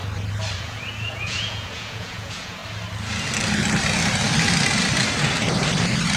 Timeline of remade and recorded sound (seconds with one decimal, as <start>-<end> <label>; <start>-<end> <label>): 0.0-0.6 recorded; 0.6-2.6 remade; 2.6-6.2 recorded